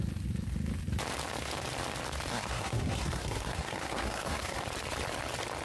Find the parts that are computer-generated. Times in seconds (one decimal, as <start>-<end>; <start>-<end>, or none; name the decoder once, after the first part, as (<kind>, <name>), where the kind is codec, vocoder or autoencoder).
2.3-4.6 (codec, SNAC)